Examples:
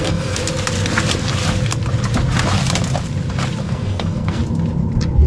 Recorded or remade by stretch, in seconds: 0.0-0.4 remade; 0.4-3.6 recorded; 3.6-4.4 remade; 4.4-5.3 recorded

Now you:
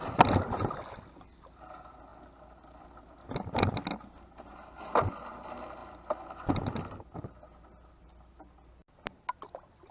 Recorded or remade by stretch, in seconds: 0.0-9.9 recorded

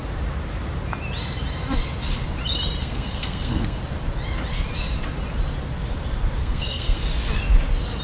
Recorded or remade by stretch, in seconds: 0.0-2.8 recorded; 2.8-3.8 remade; 3.8-6.4 recorded; 6.4-7.0 remade; 7.0-8.0 recorded

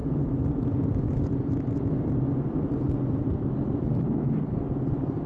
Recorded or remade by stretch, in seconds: 0.0-5.3 recorded

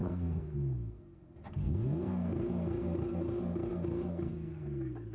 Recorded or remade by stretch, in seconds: 0.0-5.1 remade

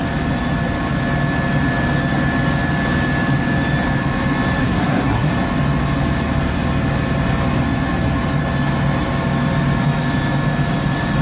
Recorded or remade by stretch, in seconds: 0.0-4.6 recorded; 4.6-5.3 remade; 5.3-11.2 recorded